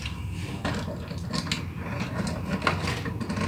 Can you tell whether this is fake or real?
real